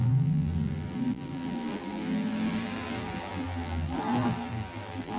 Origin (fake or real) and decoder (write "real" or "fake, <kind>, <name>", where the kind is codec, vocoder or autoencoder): fake, vocoder, BigVGAN v2